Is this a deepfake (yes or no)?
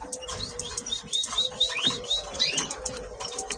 yes